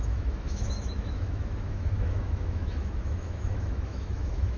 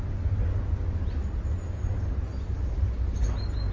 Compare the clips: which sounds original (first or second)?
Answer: second